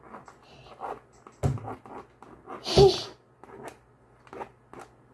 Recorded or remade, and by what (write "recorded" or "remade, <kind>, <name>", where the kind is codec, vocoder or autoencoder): recorded